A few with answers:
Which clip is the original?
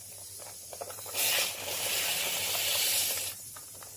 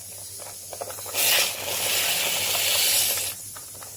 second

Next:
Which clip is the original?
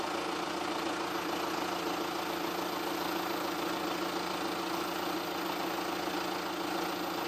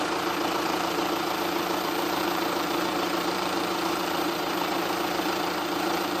first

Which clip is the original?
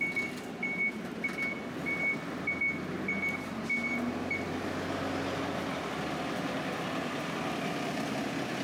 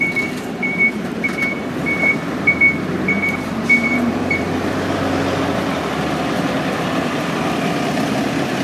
first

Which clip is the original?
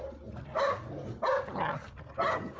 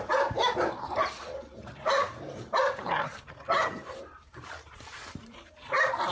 first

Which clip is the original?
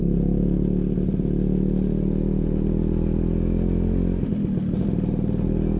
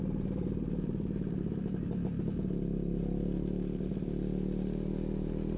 first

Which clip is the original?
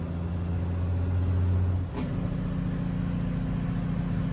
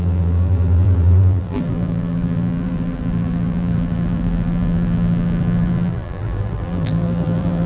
first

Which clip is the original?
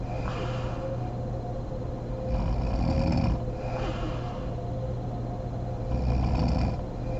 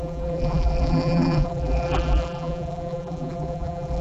first